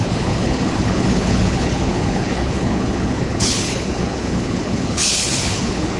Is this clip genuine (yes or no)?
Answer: no